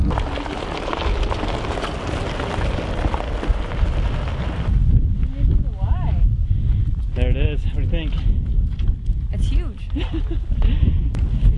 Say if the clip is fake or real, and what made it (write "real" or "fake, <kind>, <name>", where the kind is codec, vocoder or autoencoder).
real